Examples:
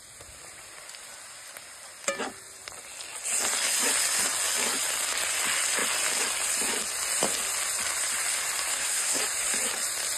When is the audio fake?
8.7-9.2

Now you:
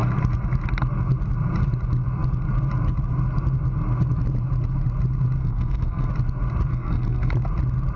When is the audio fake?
5.4-6.1; 6.7-7.3